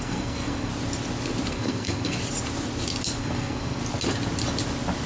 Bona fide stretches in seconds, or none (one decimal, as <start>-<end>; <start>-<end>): 0.7-1.5; 2.2-3.2; 3.8-5.1